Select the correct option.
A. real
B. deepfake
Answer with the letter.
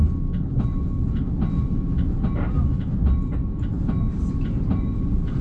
A